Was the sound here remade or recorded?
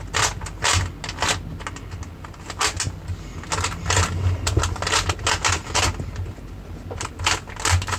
recorded